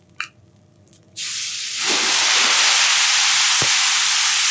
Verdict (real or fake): real